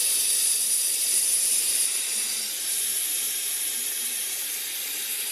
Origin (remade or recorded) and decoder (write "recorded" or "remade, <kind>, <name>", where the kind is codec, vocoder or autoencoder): remade, vocoder, BigVGAN v2